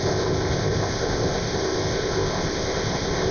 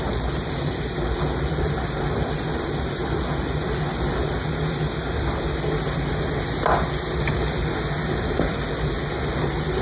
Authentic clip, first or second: second